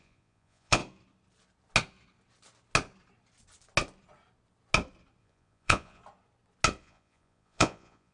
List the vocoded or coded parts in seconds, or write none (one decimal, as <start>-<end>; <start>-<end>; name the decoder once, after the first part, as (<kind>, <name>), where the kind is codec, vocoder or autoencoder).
0.0-0.8 (vocoder, Vocos); 5.2-6.0; 6.8-8.1